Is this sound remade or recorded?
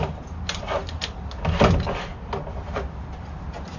recorded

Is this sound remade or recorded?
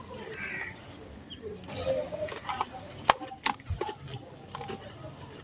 recorded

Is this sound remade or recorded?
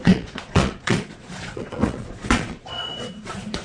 remade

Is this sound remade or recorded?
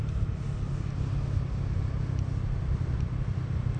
recorded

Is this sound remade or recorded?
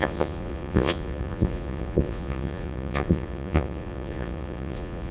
remade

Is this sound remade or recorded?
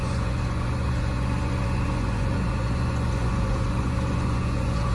remade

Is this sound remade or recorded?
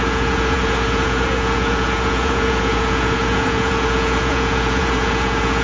remade